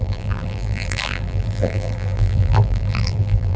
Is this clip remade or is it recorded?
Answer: remade